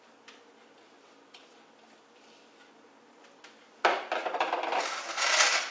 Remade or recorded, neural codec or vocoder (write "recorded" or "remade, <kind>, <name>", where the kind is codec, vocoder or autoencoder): recorded